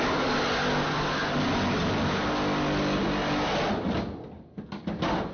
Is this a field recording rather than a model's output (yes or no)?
yes